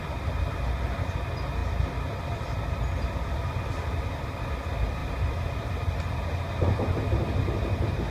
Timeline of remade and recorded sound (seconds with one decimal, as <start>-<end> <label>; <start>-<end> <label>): 0.0-8.1 recorded